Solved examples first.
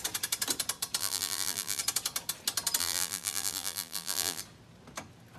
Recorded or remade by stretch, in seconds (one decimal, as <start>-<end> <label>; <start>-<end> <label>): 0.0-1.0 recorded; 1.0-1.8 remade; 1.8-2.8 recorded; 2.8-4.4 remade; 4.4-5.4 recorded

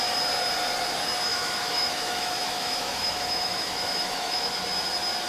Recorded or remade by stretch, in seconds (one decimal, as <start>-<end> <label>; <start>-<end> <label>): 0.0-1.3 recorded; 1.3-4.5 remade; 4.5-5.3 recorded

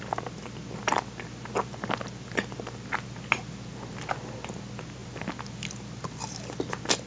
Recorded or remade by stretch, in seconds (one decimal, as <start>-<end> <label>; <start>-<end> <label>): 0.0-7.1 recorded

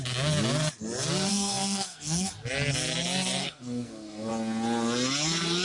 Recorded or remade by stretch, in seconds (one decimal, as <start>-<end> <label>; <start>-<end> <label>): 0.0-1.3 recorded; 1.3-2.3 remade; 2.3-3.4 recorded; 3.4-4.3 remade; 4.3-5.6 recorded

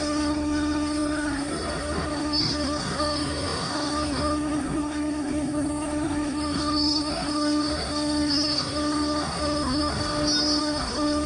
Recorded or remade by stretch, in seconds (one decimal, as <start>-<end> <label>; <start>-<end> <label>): 0.0-10.0 remade; 10.0-10.6 recorded; 10.6-11.3 remade